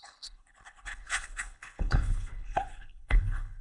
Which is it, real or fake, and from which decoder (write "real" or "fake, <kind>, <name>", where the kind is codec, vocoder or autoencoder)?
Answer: fake, codec, HILCodec